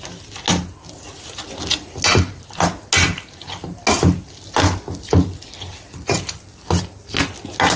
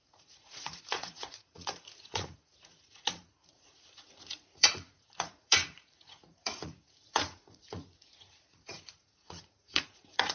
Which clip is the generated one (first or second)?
second